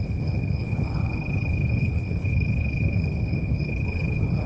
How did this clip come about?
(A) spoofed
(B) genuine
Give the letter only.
A